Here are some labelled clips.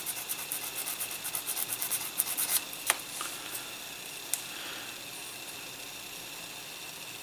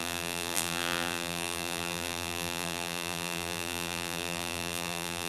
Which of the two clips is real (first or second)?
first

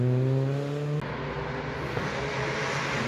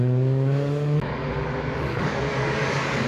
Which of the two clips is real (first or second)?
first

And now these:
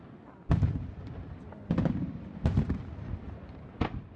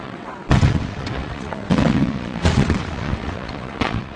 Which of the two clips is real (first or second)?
first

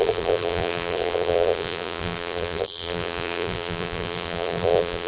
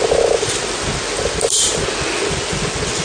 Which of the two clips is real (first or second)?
second